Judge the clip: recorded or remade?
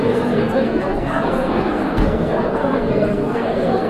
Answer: remade